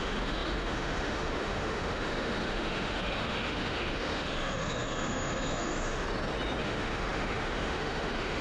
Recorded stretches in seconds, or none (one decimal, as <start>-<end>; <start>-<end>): 6.0-6.6